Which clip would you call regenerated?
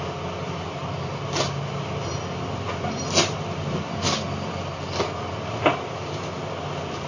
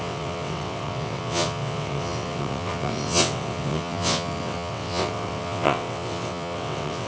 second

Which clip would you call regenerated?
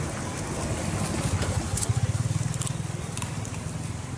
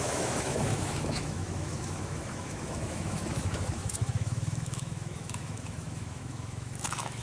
second